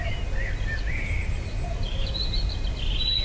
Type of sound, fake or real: real